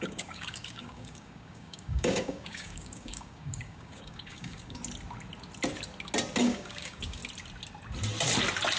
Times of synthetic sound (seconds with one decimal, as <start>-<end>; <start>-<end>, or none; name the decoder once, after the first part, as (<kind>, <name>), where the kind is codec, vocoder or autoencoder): 0.0-4.8 (codec, DAC); 6.4-7.2

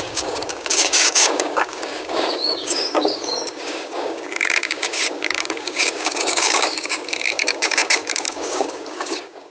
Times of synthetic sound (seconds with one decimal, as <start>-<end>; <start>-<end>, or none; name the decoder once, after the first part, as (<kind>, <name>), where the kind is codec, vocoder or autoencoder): 0.0-9.5 (codec, DAC)

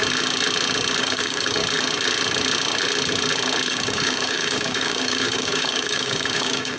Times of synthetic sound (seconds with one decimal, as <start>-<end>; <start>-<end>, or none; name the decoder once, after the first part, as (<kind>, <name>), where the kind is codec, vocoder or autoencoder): 1.0-1.6 (codec, DAC); 3.7-6.8

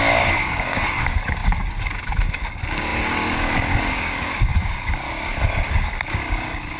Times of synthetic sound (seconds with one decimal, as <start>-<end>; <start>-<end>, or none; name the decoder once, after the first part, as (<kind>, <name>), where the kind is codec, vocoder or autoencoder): 0.0-6.8 (codec, DAC)

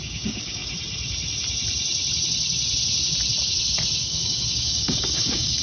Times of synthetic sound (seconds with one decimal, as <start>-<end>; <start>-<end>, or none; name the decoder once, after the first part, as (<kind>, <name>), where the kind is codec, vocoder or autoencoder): 0.0-0.6 (codec, DAC); 4.0-5.6